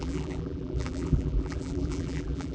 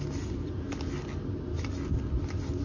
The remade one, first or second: first